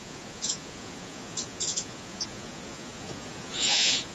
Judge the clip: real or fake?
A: fake